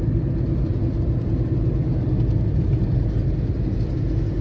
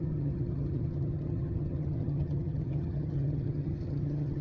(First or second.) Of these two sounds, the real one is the first